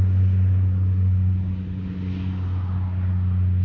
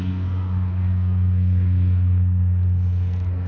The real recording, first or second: first